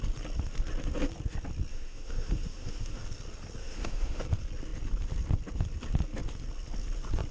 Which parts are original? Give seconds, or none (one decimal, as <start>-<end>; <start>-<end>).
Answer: 0.0-1.7; 3.0-3.6; 4.2-7.3